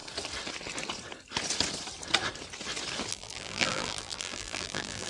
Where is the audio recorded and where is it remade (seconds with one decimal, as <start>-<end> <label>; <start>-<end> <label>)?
0.0-3.1 recorded; 3.1-5.1 remade